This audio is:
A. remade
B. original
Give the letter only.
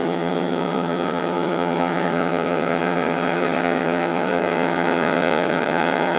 A